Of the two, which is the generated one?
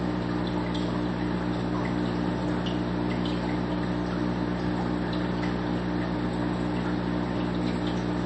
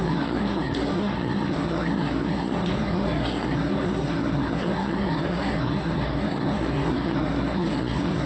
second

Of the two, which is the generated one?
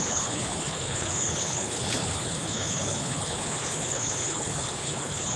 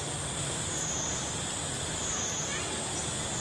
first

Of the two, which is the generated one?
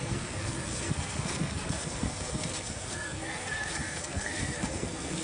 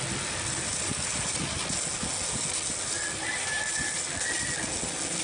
first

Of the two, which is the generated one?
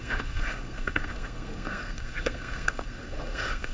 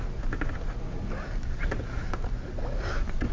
first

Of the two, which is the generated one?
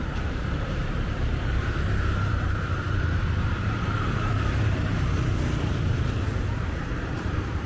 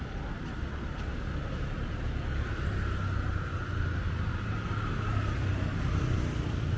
first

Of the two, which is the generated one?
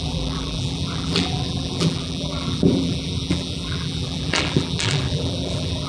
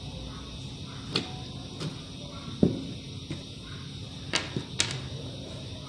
first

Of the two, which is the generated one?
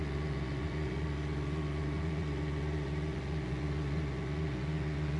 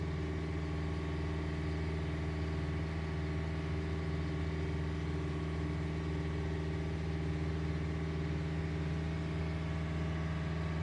first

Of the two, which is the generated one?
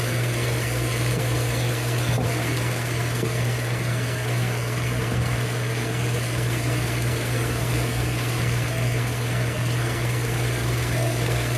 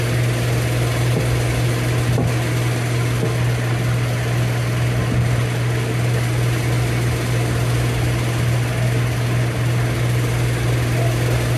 first